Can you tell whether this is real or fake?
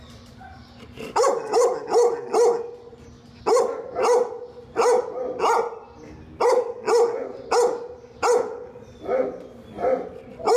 real